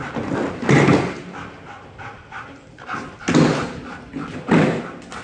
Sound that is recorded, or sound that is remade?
recorded